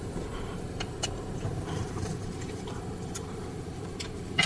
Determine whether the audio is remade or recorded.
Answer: remade